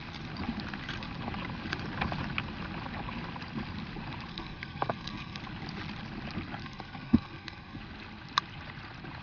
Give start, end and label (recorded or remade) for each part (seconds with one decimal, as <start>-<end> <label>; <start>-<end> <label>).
0.0-4.3 recorded; 4.3-5.4 remade; 5.4-6.6 recorded; 6.6-7.8 remade; 7.8-9.2 recorded